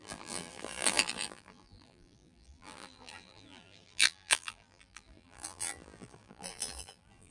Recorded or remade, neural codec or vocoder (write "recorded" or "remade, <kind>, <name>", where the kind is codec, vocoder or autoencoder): remade, vocoder, BigVGAN v2